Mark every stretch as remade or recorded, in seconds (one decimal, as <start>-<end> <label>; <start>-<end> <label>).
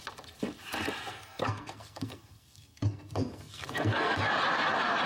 0.0-1.1 recorded; 1.1-4.2 remade; 4.2-5.1 recorded